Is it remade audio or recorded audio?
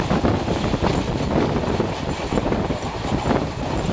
recorded